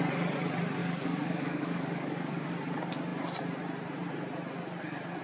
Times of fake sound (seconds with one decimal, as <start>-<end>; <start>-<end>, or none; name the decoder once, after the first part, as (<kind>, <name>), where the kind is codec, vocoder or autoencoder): 0.8-2.5 (codec, DAC)